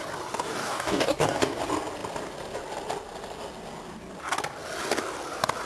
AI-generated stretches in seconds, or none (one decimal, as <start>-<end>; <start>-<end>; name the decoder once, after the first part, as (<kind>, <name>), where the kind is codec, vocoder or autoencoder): 0.6-1.6 (codec, DAC)

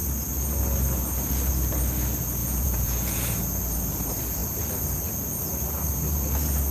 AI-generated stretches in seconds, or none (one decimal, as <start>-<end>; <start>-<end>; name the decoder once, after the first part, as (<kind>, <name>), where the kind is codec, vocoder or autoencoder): 2.4-3.2 (vocoder, Vocos)

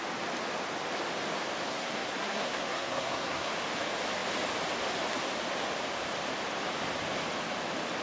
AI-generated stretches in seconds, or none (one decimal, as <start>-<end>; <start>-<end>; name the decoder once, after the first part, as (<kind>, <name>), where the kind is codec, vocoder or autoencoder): 1.7-3.5 (codec, SNAC)

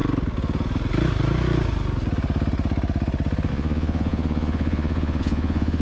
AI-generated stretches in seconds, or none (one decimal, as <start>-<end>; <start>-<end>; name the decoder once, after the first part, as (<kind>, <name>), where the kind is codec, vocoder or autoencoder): 3.5-5.8 (vocoder, Vocos)

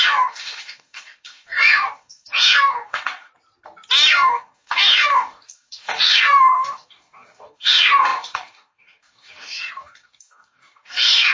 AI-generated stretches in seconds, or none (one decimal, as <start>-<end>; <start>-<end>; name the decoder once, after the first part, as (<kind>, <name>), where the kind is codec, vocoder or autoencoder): 0.0-3.3 (codec, DAC); 4.1-11.3

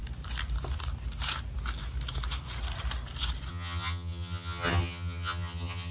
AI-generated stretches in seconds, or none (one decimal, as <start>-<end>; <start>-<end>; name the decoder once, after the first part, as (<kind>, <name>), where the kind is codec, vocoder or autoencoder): 3.5-5.9 (vocoder, HiFi-GAN)

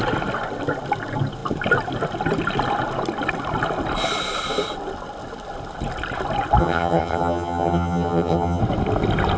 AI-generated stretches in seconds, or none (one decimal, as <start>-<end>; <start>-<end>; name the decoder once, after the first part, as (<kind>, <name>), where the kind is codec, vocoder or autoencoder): 6.6-8.6 (vocoder, HiFi-GAN)